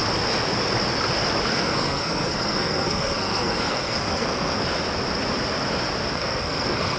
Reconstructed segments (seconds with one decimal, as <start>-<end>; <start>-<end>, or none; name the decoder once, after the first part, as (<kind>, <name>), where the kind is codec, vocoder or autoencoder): 1.5-4.6 (codec, SNAC); 6.1-7.0